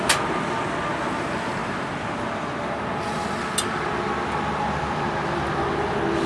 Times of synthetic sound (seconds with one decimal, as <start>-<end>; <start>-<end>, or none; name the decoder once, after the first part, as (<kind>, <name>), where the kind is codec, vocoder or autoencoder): none